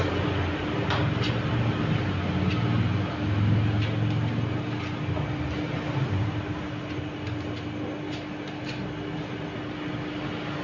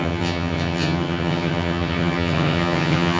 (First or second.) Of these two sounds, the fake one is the second